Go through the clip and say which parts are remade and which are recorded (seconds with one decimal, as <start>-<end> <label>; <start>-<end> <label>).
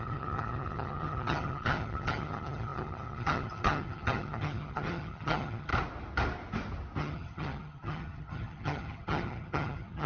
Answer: 0.0-5.7 remade; 5.7-7.0 recorded; 7.0-10.1 remade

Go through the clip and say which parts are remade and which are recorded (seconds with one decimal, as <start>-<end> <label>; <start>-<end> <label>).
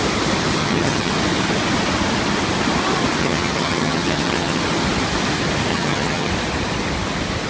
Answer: 0.0-0.6 recorded; 0.6-1.1 remade; 1.1-3.2 recorded; 3.2-4.6 remade; 4.6-5.7 recorded; 5.7-6.3 remade; 6.3-7.5 recorded